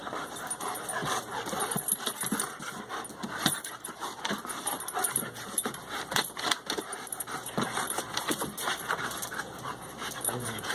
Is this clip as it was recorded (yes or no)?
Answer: no